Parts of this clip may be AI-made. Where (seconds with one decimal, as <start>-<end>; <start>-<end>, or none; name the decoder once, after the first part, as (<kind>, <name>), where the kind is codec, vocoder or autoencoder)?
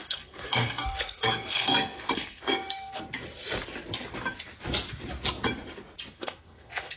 0.0-3.0 (codec, SNAC); 6.1-7.0